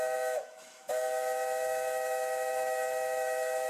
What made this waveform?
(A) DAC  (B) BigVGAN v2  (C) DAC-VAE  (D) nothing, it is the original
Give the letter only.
C